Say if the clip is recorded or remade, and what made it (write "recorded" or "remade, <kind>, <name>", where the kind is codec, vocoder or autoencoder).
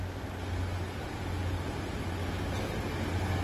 recorded